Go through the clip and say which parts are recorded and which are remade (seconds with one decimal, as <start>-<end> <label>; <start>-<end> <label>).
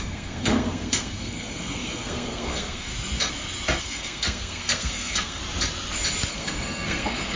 0.0-2.9 remade; 2.9-3.8 recorded; 3.8-5.4 remade; 5.4-6.3 recorded; 6.3-7.4 remade